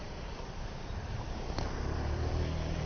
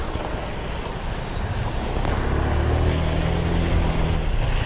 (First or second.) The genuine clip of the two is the second